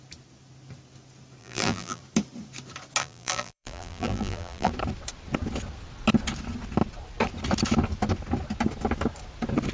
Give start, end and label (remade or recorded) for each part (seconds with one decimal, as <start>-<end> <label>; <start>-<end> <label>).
0.0-1.4 recorded; 1.4-2.0 remade; 2.0-3.0 recorded; 3.0-4.7 remade; 4.7-9.7 recorded